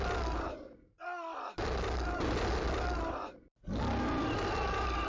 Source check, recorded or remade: recorded